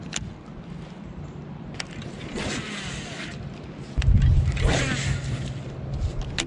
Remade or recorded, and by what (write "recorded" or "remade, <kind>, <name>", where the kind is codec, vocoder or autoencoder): recorded